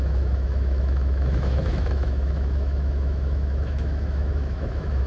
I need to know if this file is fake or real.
fake